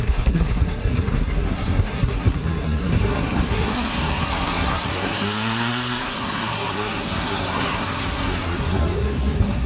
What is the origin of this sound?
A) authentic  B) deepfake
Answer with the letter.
B